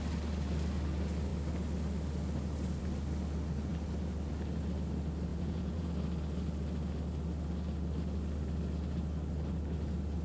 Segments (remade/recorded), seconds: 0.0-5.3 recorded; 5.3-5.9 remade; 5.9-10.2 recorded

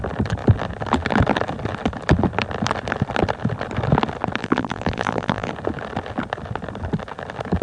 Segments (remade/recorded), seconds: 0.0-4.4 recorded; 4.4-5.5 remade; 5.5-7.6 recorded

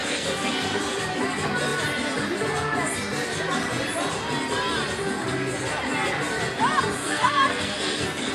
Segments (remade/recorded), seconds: 0.0-0.8 remade; 0.8-7.0 recorded; 7.0-8.3 remade